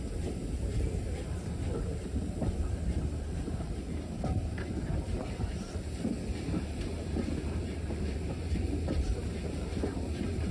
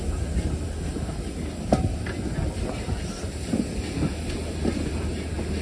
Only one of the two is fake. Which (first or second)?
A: first